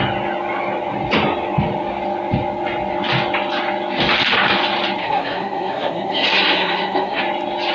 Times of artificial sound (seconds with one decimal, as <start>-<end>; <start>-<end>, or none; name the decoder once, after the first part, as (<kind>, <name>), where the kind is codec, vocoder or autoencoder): 5.0-7.2 (codec, SNAC)